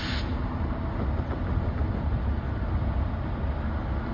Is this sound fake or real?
real